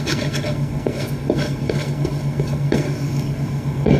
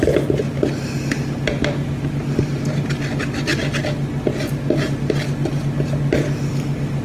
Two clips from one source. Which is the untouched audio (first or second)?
second